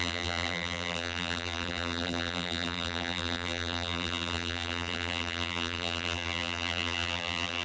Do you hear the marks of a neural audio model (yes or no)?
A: yes